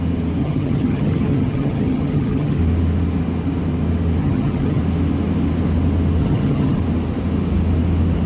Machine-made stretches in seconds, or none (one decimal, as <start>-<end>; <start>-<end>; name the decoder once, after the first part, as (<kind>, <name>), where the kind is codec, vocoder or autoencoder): 0.4-2.6 (vocoder, HiFi-GAN); 4.2-4.8; 6.2-6.8